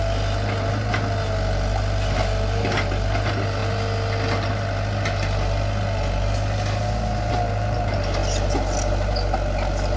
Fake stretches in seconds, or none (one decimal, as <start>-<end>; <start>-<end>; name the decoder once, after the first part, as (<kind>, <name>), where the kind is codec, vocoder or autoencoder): none